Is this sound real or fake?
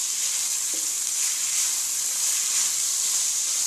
fake